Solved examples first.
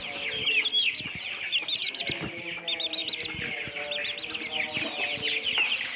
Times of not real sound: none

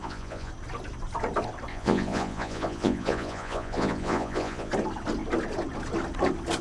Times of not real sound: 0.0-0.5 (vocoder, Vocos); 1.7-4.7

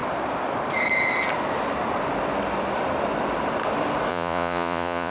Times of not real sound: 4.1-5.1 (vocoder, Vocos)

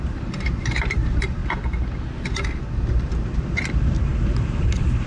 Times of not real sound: 0.0-1.4 (vocoder, BigVGAN v2); 2.7-4.1

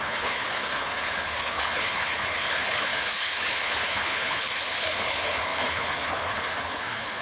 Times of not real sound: 0.0-7.2 (codec, HILCodec)